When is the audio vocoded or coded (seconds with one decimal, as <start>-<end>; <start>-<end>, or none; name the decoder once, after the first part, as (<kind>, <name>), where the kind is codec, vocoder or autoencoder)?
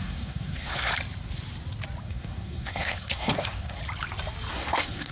0.0-0.9 (codec, SNAC); 2.0-3.8; 4.5-5.1